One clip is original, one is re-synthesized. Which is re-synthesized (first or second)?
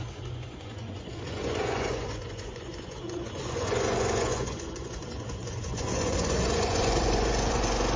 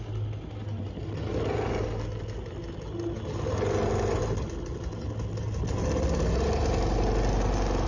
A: first